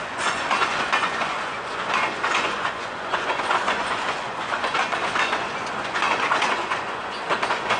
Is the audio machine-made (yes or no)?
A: yes